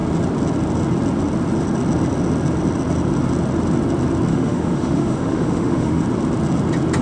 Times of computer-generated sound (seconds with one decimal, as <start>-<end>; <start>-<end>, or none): 4.3-6.0